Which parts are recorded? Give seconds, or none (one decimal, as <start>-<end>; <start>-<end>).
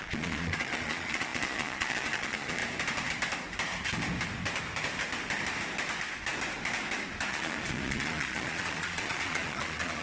2.6-7.3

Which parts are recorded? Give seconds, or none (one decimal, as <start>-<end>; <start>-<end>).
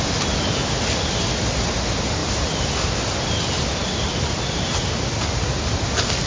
0.0-2.2; 2.8-6.3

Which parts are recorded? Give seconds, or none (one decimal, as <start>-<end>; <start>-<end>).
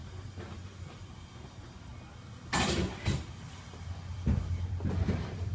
1.9-2.5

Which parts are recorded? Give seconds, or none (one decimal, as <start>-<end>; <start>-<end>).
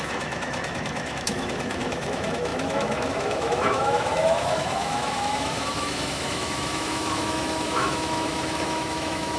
none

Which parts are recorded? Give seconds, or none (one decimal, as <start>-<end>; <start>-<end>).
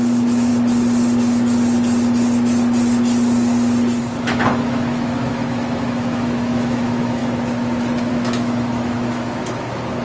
0.5-4.0; 7.2-8.1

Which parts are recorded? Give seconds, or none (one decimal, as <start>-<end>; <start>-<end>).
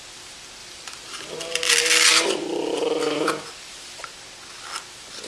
0.0-0.6; 1.6-2.1; 3.2-5.3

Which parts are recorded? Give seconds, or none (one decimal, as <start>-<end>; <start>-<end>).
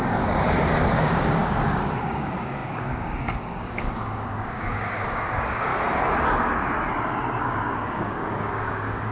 5.7-7.4